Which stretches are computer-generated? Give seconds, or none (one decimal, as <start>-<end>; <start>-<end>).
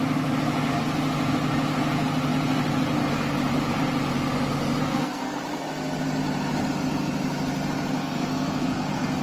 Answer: 4.8-5.4; 8.0-9.2